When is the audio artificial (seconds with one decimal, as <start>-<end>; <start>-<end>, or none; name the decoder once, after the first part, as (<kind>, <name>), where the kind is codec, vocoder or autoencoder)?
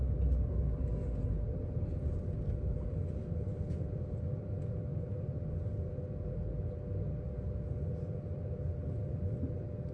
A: none